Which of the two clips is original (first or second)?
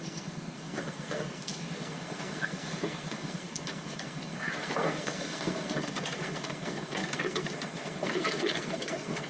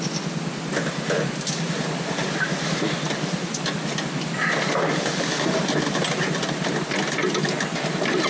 second